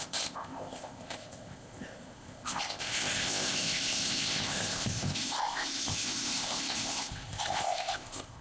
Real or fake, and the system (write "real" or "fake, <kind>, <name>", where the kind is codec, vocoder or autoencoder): fake, codec, ZipCodec